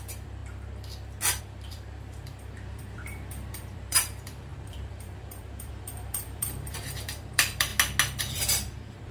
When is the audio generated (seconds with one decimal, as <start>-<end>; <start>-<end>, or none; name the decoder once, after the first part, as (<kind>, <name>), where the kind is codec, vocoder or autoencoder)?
0.0-0.4 (vocoder, BigVGAN v2); 1.4-7.7; 8.2-9.1